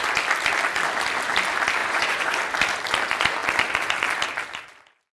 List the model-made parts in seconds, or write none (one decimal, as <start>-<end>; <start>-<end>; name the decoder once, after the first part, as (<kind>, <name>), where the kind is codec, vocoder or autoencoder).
1.8-2.4 (vocoder, Vocos)

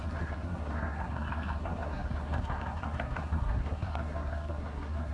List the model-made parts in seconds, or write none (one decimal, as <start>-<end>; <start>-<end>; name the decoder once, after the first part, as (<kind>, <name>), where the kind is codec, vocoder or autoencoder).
0.0-5.1 (codec, SNAC)

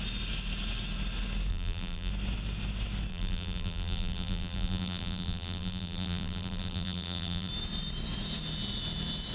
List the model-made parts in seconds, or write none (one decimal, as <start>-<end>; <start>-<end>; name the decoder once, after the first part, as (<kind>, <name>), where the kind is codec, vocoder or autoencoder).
1.5-2.1 (vocoder, BigVGAN v2); 3.1-7.5